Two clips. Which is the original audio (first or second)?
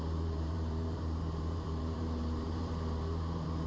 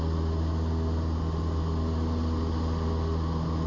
second